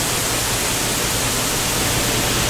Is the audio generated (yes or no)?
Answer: no